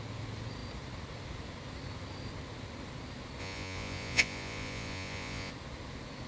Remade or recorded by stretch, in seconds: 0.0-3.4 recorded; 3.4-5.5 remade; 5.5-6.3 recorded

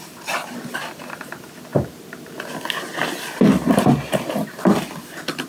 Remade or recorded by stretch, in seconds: 0.0-5.5 recorded

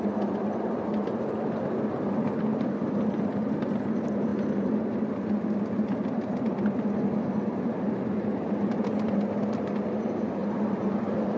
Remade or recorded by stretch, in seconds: 0.0-4.3 remade; 4.3-9.5 recorded; 9.5-11.4 remade

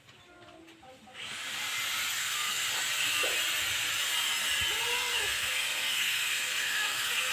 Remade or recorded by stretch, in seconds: 0.0-2.2 recorded; 2.2-2.7 remade; 2.7-4.9 recorded; 4.9-7.3 remade

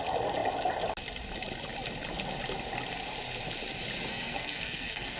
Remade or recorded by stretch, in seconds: 0.0-4.1 recorded; 4.1-5.2 remade

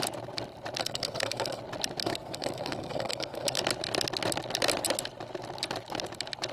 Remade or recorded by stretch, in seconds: 0.0-0.8 recorded; 0.8-1.6 remade; 1.6-2.0 recorded; 2.0-3.6 remade; 3.6-6.5 recorded